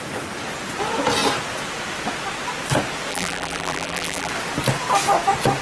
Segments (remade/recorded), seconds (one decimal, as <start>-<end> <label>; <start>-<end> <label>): 0.0-3.1 recorded; 3.1-4.3 remade; 4.3-5.6 recorded